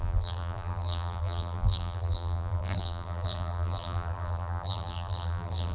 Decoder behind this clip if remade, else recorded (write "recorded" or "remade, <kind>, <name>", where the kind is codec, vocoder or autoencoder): remade, vocoder, BigVGAN v2